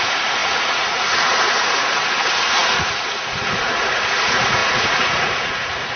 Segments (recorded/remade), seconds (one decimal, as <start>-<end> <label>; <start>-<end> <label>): 0.0-6.0 remade